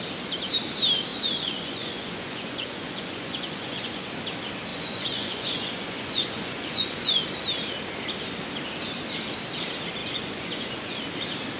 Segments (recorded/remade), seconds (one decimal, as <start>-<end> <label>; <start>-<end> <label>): 0.0-1.1 recorded; 1.1-4.1 remade; 4.1-4.7 recorded; 4.7-7.2 remade; 7.2-10.0 recorded; 10.0-11.0 remade; 11.0-11.6 recorded